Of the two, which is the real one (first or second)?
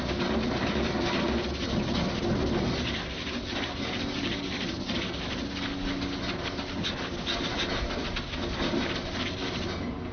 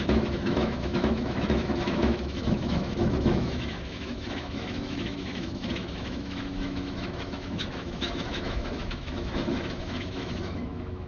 first